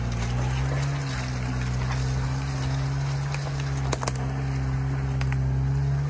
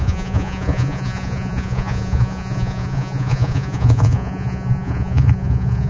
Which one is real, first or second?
first